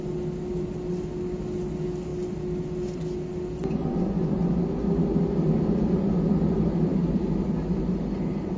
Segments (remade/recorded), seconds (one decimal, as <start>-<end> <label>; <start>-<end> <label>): 0.0-3.8 recorded; 3.8-4.5 remade; 4.5-8.6 recorded